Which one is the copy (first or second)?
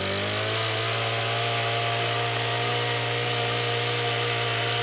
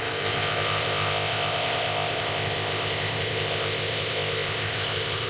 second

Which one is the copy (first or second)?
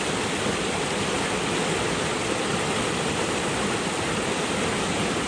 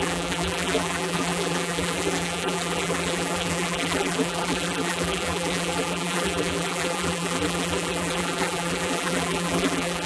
second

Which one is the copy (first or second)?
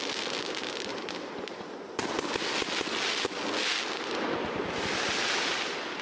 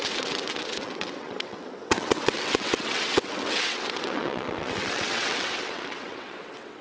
second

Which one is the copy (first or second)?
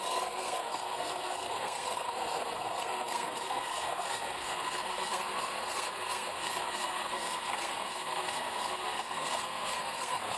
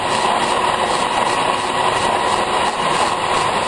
first